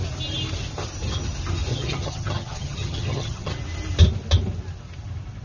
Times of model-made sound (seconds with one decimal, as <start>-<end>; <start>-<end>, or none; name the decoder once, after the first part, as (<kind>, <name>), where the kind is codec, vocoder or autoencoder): 1.7-3.5 (vocoder, HiFi-GAN)